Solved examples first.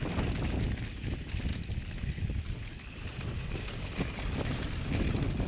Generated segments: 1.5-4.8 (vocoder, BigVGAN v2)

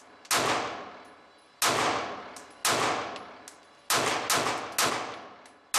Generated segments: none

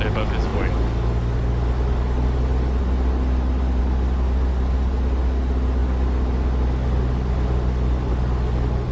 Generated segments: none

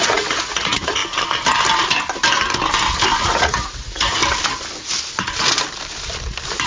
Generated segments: 0.0-1.0 (vocoder, Vocos); 3.2-4.2

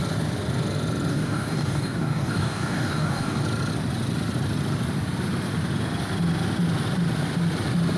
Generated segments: 1.1-3.4 (codec, DAC)